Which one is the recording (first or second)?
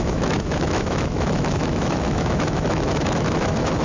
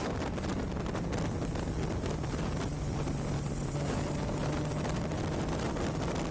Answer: second